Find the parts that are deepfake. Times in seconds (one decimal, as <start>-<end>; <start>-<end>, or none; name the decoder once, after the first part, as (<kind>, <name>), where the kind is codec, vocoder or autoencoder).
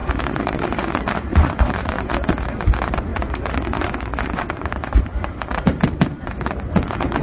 0.0-5.5 (vocoder, Vocos); 6.1-7.2